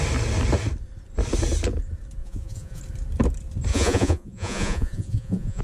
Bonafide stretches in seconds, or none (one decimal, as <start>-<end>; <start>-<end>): 0.0-2.2; 2.8-3.7